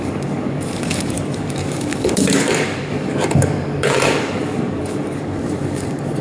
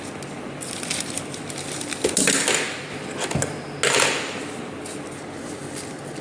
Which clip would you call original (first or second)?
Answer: second